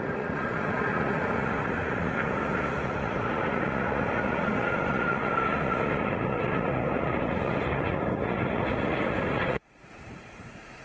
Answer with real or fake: fake